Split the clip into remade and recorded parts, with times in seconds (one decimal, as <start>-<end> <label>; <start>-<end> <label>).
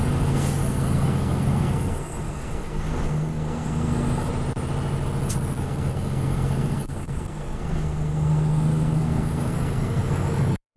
0.0-4.3 remade; 4.3-5.3 recorded; 5.3-10.8 remade